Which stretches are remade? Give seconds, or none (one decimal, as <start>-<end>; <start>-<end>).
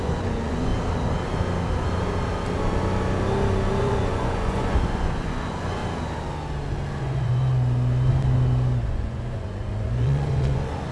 0.0-0.7; 3.8-5.8; 7.0-7.4; 8.9-10.9